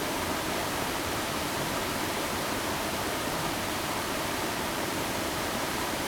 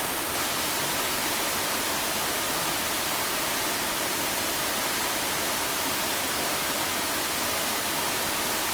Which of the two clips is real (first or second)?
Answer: second